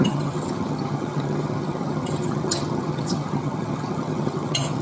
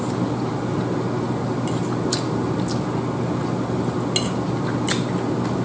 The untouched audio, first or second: second